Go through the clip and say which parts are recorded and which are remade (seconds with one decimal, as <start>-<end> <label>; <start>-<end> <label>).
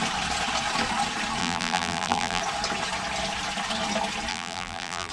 0.0-1.4 recorded; 1.4-2.4 remade; 2.4-4.3 recorded; 4.3-5.1 remade